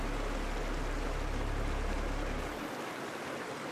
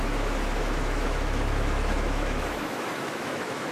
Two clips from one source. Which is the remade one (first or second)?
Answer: second